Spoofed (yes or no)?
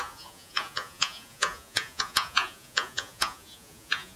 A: yes